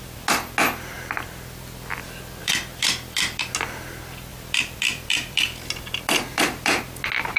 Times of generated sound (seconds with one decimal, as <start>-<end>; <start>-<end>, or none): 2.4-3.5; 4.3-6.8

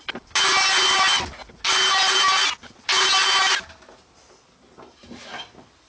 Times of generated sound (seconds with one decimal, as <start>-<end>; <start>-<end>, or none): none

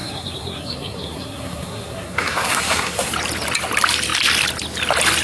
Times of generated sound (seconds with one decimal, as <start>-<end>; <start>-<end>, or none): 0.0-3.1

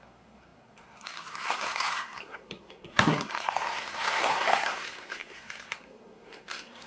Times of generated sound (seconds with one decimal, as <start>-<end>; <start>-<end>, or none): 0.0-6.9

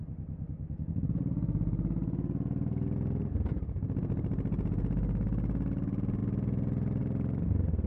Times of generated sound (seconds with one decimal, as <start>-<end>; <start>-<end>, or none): 3.2-4.0